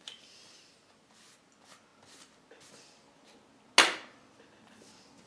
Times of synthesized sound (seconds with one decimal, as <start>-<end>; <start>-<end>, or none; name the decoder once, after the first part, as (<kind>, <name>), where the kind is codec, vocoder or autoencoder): none